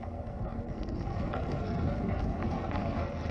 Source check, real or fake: fake